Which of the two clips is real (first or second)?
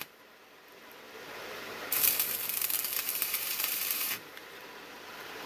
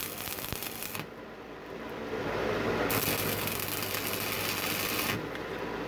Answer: second